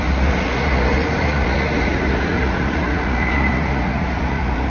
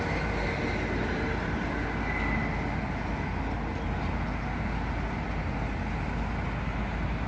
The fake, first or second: first